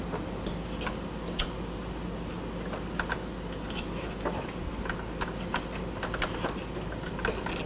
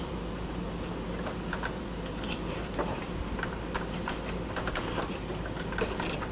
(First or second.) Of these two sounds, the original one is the first